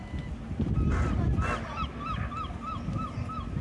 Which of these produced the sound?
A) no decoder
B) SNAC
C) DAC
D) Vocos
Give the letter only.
A